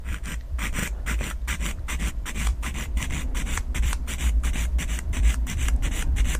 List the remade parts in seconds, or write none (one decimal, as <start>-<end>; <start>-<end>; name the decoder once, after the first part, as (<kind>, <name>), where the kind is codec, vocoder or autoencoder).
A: 0.0-6.4 (vocoder, BigVGAN v2)